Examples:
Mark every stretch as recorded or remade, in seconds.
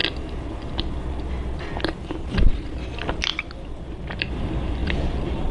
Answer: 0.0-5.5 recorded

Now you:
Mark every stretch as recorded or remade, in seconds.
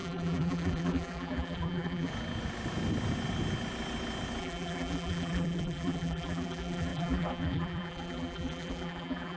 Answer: 0.0-2.1 remade; 2.1-4.4 recorded; 4.4-9.4 remade